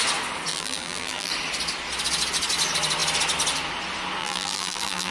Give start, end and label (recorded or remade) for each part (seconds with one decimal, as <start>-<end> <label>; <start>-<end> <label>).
0.0-0.5 recorded; 0.5-1.3 remade; 1.3-4.2 recorded; 4.2-5.1 remade